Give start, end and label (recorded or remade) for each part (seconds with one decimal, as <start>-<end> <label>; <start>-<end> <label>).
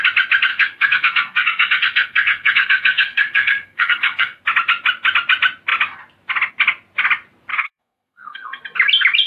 0.0-0.5 recorded; 0.5-4.4 remade; 4.4-7.5 recorded; 7.5-8.6 remade; 8.6-9.3 recorded